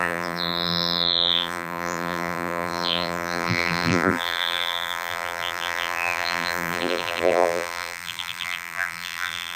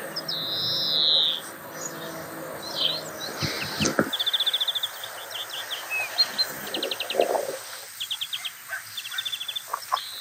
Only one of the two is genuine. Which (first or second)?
second